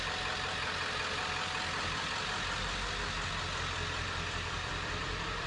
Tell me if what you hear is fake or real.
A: real